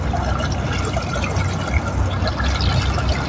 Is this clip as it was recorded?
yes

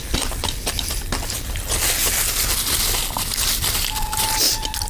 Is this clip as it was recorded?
yes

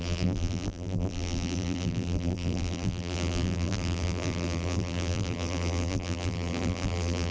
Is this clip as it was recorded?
no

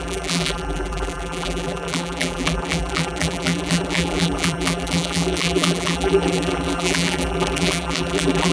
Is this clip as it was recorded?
no